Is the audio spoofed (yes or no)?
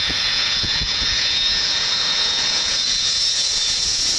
yes